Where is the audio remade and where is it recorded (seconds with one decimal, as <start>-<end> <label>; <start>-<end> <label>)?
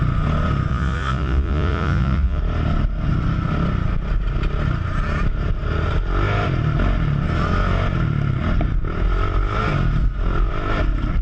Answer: 0.0-0.7 recorded; 0.7-2.4 remade; 2.4-11.2 recorded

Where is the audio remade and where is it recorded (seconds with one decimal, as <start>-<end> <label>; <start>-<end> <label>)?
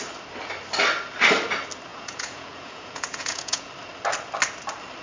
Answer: 0.0-1.9 recorded; 1.9-3.7 remade; 3.7-5.0 recorded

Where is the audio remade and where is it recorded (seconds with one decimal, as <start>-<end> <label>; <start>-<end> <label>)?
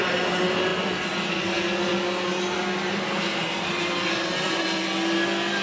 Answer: 0.0-5.6 recorded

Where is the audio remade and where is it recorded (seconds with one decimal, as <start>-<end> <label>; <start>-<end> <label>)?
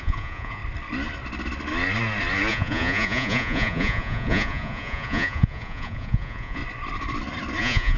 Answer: 0.0-0.6 remade; 0.6-2.5 recorded; 2.5-6.6 remade; 6.6-7.6 recorded; 7.6-8.0 remade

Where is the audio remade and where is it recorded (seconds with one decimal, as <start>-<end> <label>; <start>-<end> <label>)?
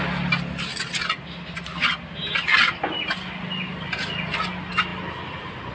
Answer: 0.0-5.7 recorded